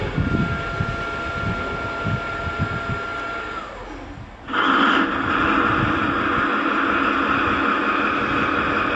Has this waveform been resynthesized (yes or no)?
no